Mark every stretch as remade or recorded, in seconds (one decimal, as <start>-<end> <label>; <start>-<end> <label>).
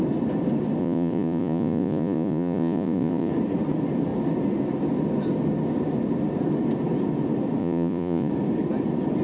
0.0-0.8 recorded; 0.8-3.3 remade; 3.3-7.6 recorded; 7.6-8.3 remade; 8.3-9.2 recorded